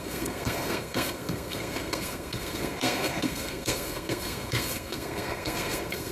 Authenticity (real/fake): fake